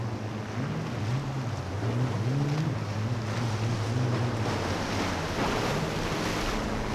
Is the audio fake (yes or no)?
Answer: no